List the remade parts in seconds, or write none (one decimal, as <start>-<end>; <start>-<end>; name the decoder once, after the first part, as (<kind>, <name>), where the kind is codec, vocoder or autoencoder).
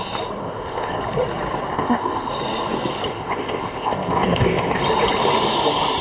0.4-1.0 (codec, ZipCodec); 1.7-2.3; 3.1-4.8